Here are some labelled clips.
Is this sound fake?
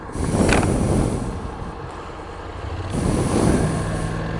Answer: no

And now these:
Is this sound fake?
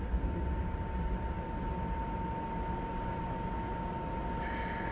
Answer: no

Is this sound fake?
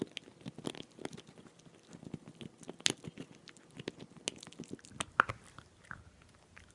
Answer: no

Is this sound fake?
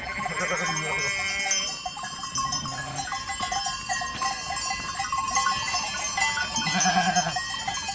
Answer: no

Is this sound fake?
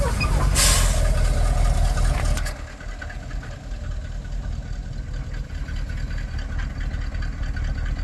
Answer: no